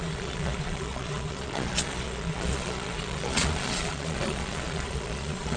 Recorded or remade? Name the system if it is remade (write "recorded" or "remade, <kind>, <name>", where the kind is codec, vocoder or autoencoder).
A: remade, vocoder, Vocos